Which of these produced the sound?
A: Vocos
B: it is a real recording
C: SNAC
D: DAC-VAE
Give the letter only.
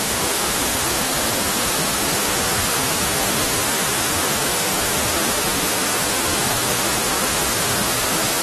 D